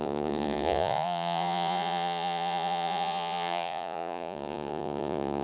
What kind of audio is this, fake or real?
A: fake